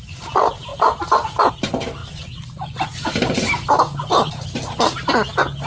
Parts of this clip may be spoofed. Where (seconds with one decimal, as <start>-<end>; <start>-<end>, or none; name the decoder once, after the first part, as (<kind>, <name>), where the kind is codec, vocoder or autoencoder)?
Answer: 0.7-1.5 (vocoder, BigVGAN v2); 2.0-4.3